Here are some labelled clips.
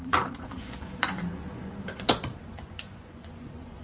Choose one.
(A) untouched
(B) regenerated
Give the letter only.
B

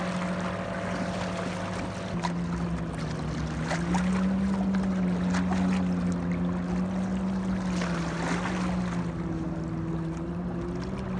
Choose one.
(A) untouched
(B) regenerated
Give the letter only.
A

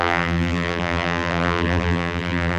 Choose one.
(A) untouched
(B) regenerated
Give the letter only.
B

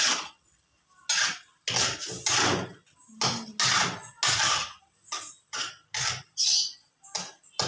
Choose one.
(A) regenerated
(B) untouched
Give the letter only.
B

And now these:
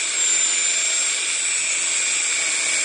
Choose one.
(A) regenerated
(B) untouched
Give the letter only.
B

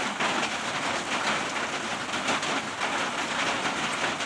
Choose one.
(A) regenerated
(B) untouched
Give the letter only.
B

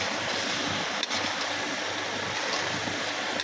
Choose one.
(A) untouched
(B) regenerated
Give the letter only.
A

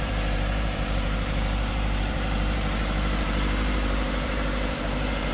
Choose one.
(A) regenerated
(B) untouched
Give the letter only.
A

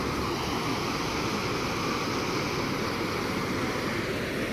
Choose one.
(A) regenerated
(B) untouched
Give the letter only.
B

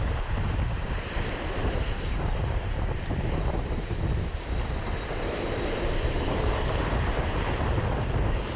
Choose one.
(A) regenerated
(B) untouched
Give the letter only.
A